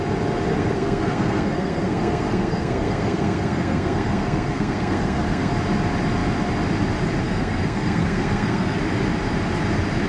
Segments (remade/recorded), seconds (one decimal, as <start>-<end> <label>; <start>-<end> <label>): 0.0-0.5 recorded; 0.5-5.5 remade; 5.5-7.2 recorded; 7.2-8.8 remade; 8.8-10.1 recorded